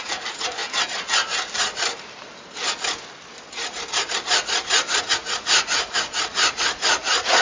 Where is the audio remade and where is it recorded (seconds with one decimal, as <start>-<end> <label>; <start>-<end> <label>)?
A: 0.0-0.6 remade; 0.6-5.0 recorded; 5.0-7.4 remade